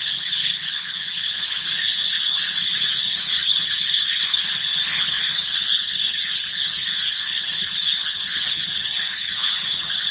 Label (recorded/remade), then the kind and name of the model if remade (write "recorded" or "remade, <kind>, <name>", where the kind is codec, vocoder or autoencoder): remade, codec, HILCodec